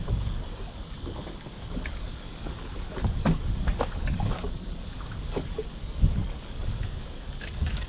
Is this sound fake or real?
fake